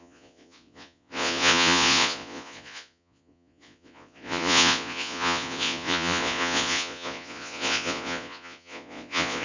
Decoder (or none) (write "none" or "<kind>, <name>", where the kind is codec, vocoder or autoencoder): vocoder, Vocos